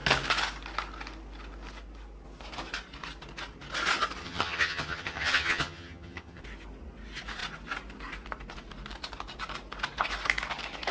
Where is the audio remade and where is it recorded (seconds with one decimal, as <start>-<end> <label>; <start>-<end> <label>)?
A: 0.0-4.2 recorded; 4.2-6.4 remade; 6.4-10.9 recorded